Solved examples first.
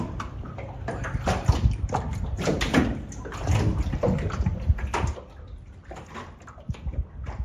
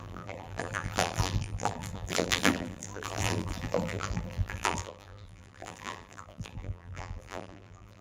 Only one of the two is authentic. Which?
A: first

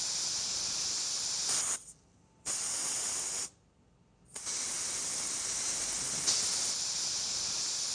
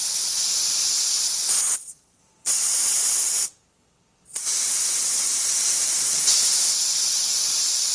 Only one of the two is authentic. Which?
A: first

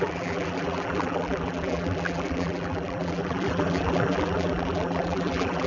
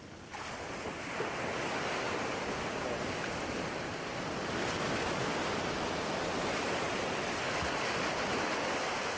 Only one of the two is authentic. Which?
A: second